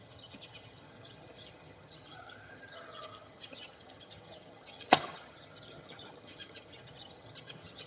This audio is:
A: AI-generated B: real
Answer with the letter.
A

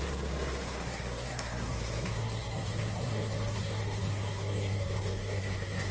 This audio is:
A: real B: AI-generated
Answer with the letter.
B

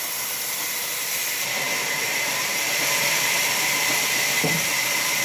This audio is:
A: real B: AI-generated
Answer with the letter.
B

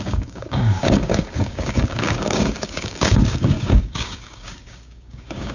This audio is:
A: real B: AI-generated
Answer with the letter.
B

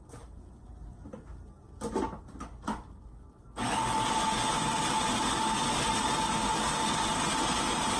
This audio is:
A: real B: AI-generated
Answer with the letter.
A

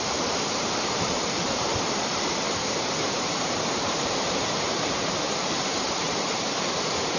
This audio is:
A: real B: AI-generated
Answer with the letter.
B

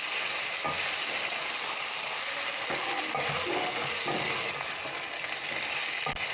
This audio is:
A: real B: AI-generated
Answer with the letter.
A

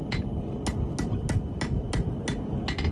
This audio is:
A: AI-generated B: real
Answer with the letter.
B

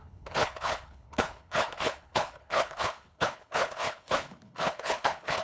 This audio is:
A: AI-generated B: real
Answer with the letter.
A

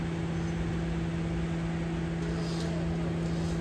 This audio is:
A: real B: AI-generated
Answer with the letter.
A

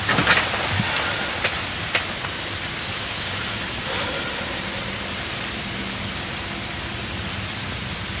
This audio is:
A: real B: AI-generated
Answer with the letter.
A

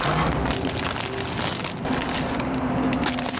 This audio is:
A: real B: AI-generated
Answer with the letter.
A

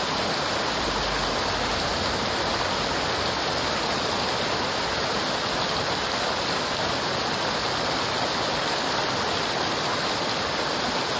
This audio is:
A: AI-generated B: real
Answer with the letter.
B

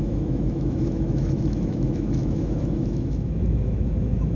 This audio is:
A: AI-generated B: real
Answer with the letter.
A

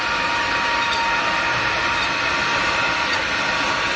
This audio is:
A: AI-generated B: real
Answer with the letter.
B